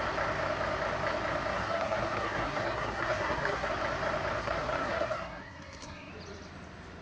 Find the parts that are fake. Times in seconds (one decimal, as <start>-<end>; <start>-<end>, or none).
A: 1.5-3.7; 4.4-6.1